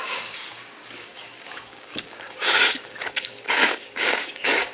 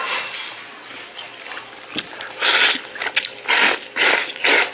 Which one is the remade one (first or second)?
first